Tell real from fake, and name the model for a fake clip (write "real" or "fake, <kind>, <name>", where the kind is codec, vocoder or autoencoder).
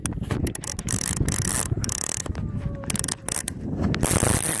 real